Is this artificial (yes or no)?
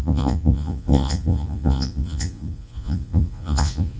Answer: yes